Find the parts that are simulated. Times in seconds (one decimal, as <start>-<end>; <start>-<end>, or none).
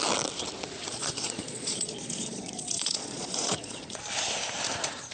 0.9-4.0